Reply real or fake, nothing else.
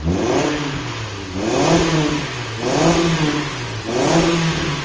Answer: real